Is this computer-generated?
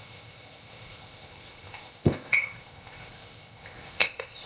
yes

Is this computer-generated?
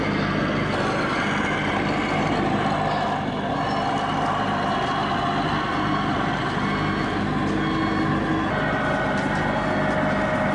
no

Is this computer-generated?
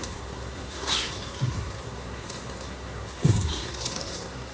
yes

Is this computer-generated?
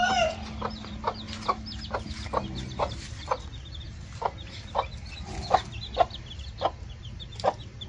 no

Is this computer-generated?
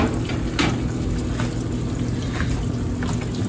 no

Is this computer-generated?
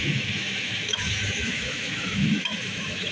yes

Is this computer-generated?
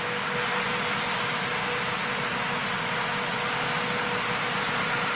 no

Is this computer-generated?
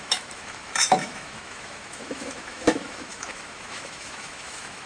yes